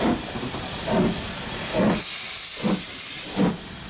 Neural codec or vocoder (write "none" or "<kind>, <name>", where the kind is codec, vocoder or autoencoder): none